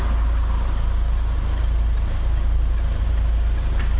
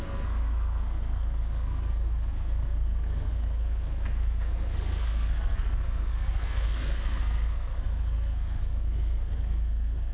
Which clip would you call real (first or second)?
first